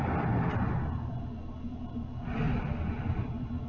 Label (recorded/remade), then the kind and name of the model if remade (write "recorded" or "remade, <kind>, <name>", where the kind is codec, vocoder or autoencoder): recorded